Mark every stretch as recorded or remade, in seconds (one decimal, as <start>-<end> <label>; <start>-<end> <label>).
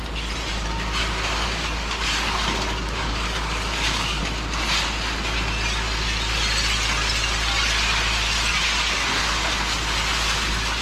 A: 0.0-1.0 recorded; 1.0-4.2 remade; 4.2-10.8 recorded